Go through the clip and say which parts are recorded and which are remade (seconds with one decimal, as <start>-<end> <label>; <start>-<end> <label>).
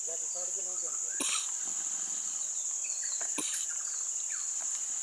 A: 0.0-0.6 remade; 0.6-1.3 recorded; 1.3-5.0 remade